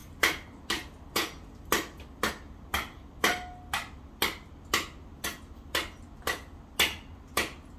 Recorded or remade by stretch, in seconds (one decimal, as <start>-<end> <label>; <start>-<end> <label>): 0.0-7.8 recorded